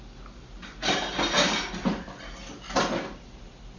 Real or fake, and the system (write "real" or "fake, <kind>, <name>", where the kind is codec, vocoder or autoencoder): real